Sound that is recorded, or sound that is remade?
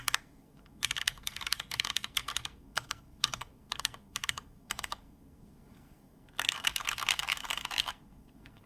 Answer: remade